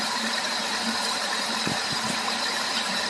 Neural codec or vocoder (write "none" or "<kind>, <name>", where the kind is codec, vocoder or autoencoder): vocoder, BigVGAN v2